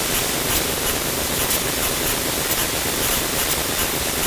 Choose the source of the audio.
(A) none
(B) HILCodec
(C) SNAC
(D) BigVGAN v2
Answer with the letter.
D